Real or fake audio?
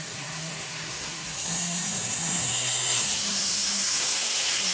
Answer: fake